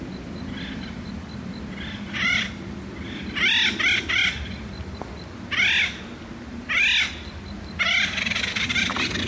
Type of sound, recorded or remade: recorded